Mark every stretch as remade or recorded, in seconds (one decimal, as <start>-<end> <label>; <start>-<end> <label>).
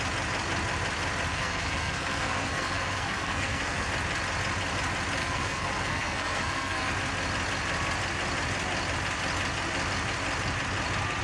0.0-1.3 recorded; 1.3-3.9 remade; 3.9-5.2 recorded; 5.2-6.9 remade; 6.9-11.2 recorded